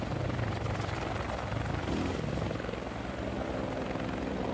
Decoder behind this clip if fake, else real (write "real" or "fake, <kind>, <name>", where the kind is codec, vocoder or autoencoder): real